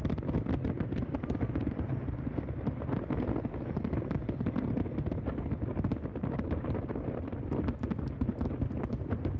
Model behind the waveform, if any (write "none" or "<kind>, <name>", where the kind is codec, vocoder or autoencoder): none